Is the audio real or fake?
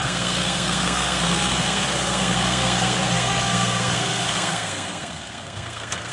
fake